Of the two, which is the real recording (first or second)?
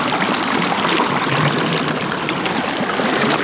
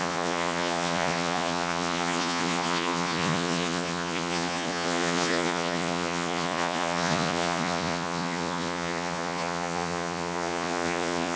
first